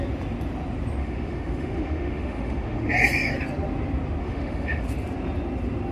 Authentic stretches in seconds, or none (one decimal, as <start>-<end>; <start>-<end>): 0.0-1.0; 2.9-4.2; 4.8-5.9